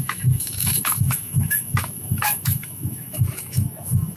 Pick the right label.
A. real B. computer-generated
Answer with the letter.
B